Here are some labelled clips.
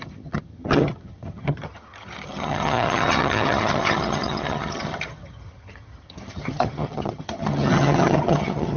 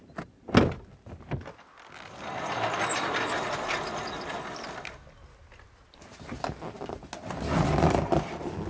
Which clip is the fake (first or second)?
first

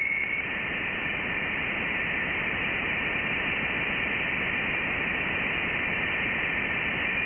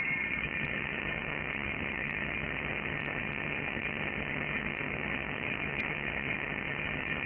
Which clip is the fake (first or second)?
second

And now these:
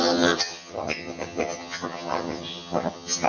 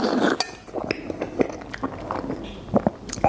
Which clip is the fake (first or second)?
first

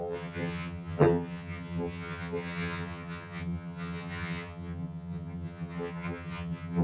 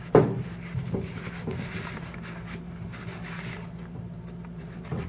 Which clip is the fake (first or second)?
first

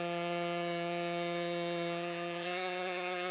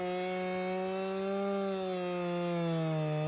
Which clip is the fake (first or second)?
first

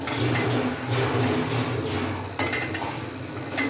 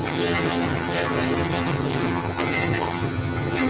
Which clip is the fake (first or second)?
second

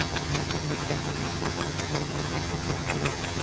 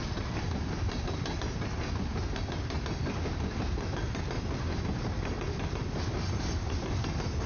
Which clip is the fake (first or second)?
first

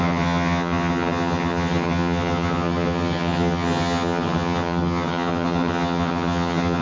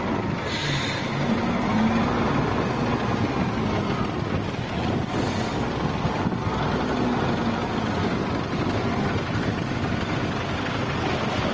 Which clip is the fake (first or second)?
first